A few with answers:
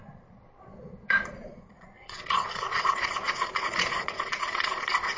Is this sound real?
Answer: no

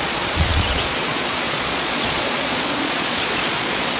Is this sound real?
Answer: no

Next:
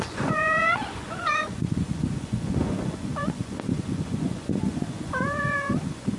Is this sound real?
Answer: no